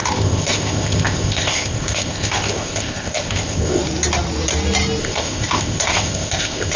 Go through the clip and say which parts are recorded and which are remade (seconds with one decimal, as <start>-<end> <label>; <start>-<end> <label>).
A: 0.0-3.8 remade; 3.8-5.0 recorded; 5.0-6.8 remade